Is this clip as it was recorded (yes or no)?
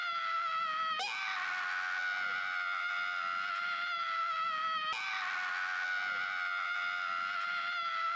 yes